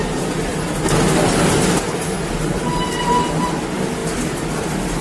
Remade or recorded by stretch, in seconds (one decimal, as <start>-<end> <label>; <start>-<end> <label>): 0.0-4.0 recorded; 4.0-5.0 remade